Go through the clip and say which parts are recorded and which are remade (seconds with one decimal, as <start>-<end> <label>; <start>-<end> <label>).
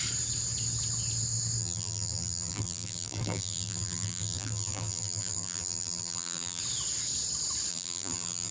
0.0-1.6 recorded; 1.6-6.6 remade; 6.6-7.7 recorded; 7.7-8.5 remade